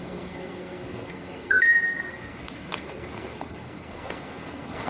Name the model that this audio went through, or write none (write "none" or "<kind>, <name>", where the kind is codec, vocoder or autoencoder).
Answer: codec, SNAC